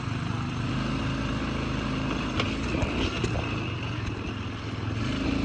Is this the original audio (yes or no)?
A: yes